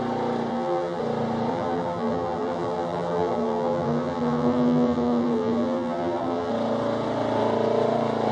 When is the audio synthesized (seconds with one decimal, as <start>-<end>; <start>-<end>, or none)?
0.5-1.0; 1.5-6.5